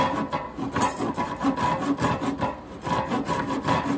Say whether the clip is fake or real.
real